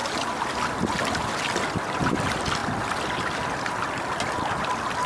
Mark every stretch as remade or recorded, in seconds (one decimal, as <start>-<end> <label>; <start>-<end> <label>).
0.0-5.1 recorded